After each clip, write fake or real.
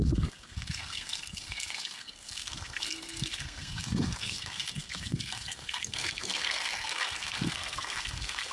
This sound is fake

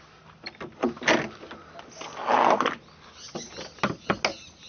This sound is real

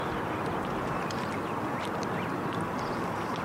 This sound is real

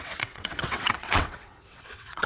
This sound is fake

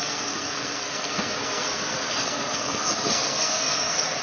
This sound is fake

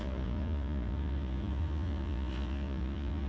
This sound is fake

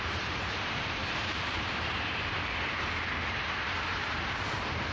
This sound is fake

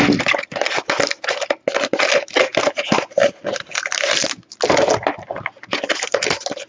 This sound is real